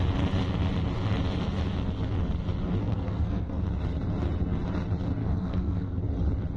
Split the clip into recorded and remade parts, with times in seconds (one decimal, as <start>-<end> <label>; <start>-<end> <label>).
0.0-2.8 recorded; 2.8-3.6 remade; 3.6-5.2 recorded; 5.2-6.0 remade; 6.0-6.6 recorded